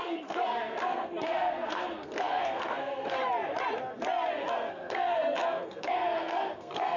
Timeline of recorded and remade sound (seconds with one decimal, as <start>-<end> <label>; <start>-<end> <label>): 0.0-3.2 remade; 3.2-4.5 recorded; 4.5-7.0 remade